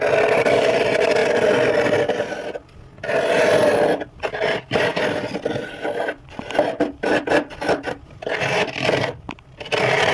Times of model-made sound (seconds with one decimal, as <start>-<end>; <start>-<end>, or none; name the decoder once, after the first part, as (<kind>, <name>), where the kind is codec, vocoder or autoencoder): none